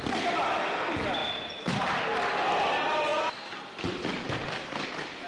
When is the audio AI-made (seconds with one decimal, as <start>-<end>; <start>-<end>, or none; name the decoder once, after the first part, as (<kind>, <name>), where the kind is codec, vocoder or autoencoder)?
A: none